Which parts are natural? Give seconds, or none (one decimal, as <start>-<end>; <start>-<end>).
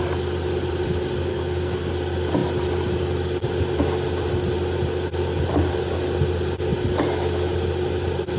0.0-1.3; 1.9-8.4